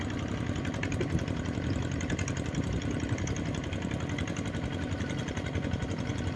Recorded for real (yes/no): yes